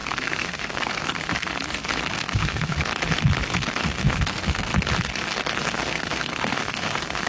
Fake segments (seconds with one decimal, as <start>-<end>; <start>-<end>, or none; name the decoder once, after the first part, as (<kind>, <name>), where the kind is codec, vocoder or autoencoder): 0.0-1.5 (codec, SNAC); 2.1-2.9; 3.5-4.7; 5.7-7.3